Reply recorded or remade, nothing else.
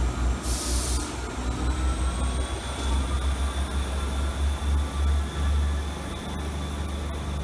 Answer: recorded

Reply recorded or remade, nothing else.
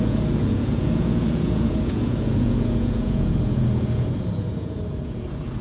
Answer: remade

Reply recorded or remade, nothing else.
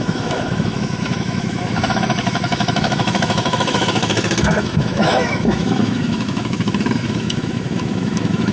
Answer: remade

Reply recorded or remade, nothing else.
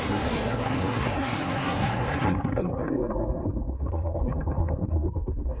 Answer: remade